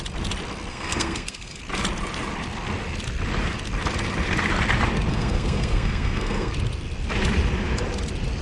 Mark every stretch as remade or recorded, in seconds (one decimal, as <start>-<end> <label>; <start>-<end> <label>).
0.0-0.7 recorded; 0.7-1.6 remade; 1.6-5.1 recorded; 5.1-6.5 remade; 6.5-8.4 recorded